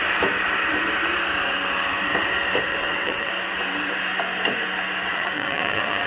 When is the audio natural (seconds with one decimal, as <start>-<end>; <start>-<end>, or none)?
0.0-2.7; 3.3-5.1